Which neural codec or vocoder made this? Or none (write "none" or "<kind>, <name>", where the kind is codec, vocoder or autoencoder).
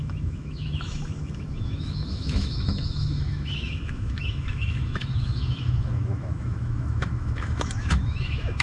autoencoder, DAC-VAE